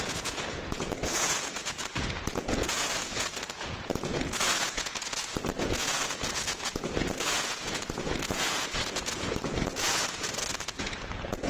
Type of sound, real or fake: fake